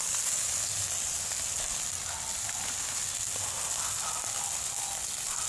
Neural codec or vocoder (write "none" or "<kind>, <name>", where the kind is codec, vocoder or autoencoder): none